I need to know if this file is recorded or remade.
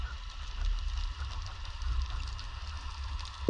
recorded